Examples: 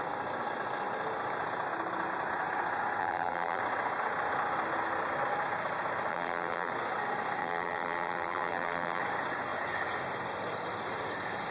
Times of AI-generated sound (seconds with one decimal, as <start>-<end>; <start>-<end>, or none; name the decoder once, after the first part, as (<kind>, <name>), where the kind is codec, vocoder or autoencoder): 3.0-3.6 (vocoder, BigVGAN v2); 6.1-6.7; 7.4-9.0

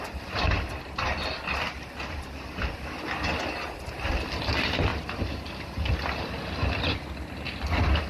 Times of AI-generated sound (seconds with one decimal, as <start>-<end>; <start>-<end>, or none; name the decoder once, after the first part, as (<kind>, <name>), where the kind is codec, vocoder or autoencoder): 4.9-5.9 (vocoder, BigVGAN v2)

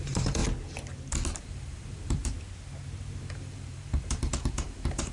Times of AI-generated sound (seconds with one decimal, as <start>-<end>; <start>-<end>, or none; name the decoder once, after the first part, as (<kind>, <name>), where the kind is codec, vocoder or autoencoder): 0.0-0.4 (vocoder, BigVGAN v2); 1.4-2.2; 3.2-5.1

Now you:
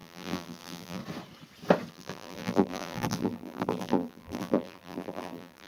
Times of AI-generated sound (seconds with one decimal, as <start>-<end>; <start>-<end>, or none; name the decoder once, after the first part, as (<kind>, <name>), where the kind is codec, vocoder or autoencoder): 0.0-1.0 (vocoder, BigVGAN v2); 1.9-5.7

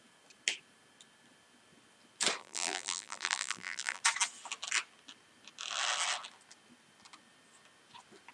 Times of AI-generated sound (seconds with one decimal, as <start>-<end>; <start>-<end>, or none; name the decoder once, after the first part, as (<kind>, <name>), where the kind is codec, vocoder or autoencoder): 2.4-4.0 (vocoder, BigVGAN v2)